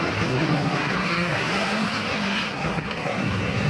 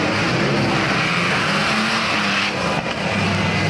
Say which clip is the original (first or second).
second